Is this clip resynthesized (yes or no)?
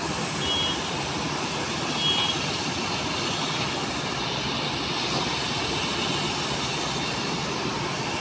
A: no